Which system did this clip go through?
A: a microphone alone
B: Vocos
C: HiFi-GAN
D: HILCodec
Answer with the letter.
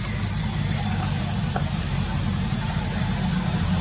A